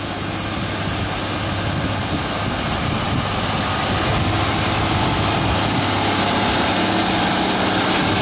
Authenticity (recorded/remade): recorded